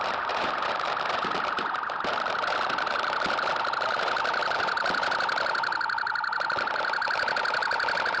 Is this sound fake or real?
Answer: fake